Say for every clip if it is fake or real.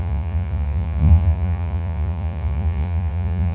fake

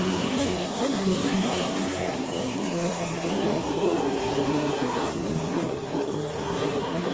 fake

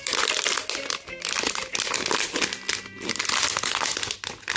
real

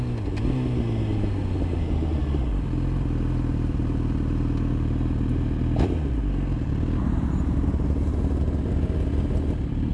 real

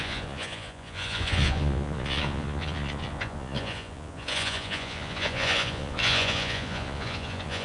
fake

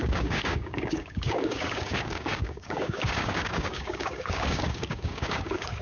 fake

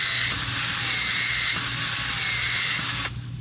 real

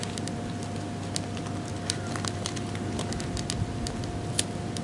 real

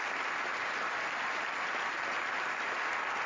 real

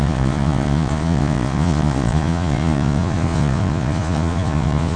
fake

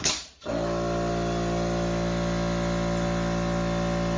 real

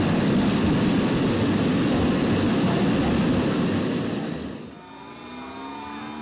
real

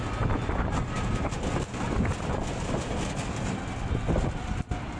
real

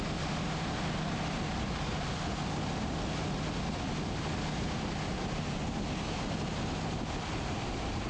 real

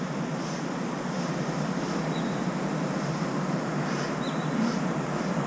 real